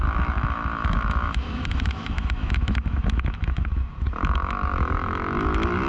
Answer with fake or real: fake